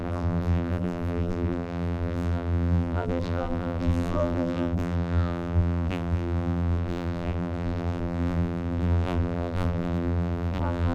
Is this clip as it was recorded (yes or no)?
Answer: no